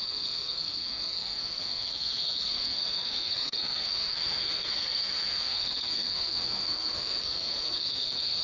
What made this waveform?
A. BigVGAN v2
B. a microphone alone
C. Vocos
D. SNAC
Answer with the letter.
D